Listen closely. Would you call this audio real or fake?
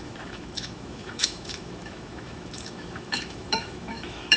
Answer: fake